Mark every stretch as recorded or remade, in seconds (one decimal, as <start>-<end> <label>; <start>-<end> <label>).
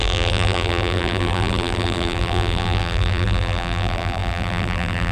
0.0-5.1 remade